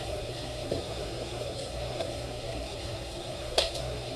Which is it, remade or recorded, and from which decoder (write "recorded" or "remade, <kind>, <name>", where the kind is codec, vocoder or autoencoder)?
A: remade, codec, SNAC